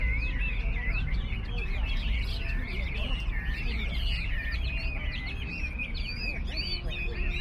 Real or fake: real